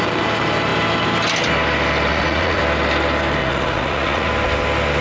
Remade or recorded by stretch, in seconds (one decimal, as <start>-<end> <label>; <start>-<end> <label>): 0.0-2.1 recorded; 2.1-2.6 remade; 2.6-3.4 recorded; 3.4-4.3 remade; 4.3-5.0 recorded